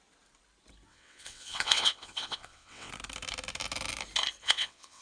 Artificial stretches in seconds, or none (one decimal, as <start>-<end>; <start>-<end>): 0.9-2.9; 4.4-5.0